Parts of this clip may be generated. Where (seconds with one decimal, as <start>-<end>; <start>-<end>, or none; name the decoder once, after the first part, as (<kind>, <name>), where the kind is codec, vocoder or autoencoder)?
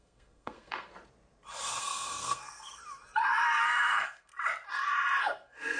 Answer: 0.0-0.9 (codec, SNAC); 1.8-2.8; 3.6-4.3; 5.2-5.8